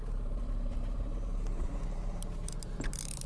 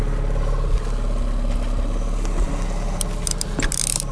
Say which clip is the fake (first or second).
first